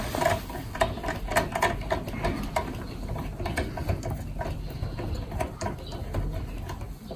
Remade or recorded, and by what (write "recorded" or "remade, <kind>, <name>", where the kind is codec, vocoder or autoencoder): recorded